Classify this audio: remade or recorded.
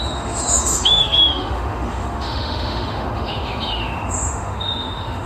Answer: remade